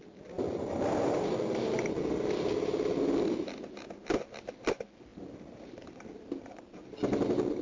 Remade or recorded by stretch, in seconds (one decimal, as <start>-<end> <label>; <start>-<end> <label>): 0.0-0.5 recorded; 0.5-1.2 remade; 1.2-7.6 recorded